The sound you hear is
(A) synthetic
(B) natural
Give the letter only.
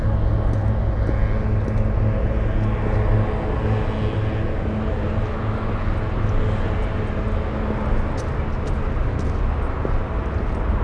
B